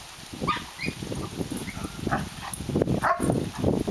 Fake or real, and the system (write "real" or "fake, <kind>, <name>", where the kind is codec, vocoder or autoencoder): real